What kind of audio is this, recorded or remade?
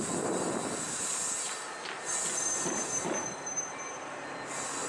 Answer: recorded